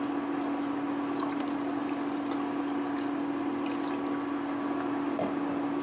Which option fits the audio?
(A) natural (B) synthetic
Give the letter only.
A